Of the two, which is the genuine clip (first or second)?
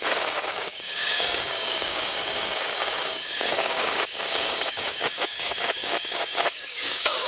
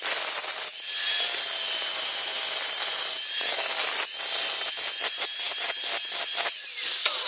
second